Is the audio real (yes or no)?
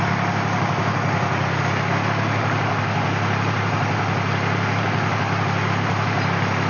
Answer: yes